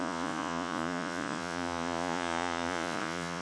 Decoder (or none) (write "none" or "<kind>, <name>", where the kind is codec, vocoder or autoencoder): vocoder, Vocos